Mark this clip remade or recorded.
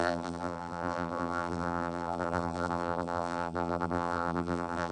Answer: remade